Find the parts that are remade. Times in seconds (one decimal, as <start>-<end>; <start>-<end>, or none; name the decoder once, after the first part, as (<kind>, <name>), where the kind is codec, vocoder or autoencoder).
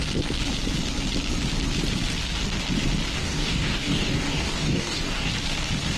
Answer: 3.2-5.3 (codec, DAC)